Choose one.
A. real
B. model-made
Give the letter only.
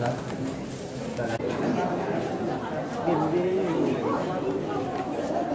A